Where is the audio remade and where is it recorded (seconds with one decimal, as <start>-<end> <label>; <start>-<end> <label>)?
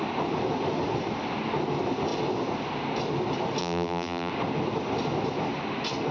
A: 0.0-3.6 recorded; 3.6-4.3 remade; 4.3-6.1 recorded